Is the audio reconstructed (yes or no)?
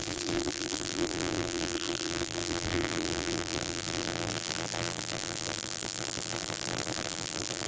yes